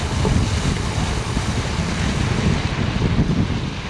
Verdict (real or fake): real